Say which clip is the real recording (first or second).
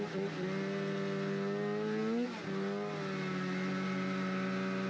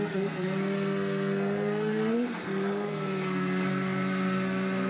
first